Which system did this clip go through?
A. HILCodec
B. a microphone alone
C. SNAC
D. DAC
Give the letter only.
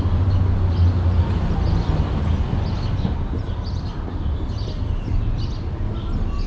B